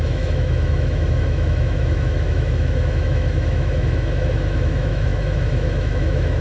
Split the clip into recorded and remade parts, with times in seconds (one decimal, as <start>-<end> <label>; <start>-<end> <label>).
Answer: 0.0-6.4 remade